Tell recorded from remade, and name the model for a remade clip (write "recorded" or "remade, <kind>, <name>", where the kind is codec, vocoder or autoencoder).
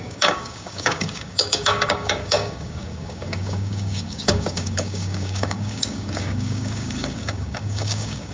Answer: remade, codec, DAC